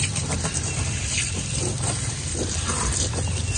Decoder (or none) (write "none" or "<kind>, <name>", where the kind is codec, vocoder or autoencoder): vocoder, BigVGAN v2